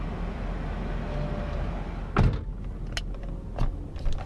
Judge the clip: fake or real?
real